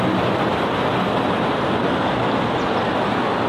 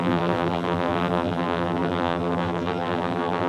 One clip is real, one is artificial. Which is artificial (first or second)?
second